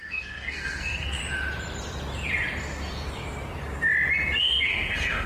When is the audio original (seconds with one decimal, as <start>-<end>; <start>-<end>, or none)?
1.2-4.4